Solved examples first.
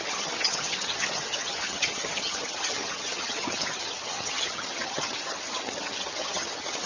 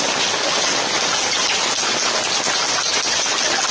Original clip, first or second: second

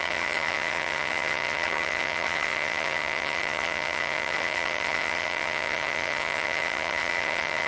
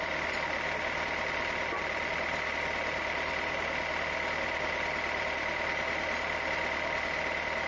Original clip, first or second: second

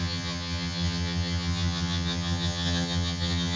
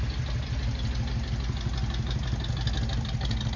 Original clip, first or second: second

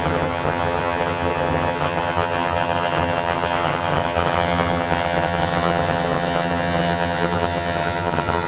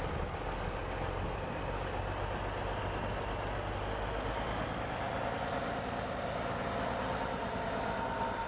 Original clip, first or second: second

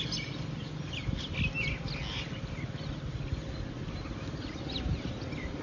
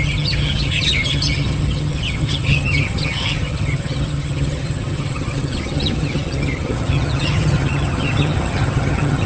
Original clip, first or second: first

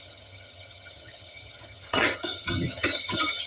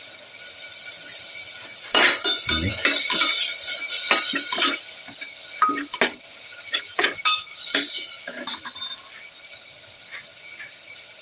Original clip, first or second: second